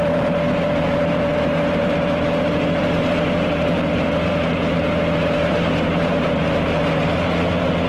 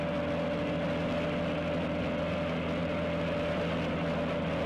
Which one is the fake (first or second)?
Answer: first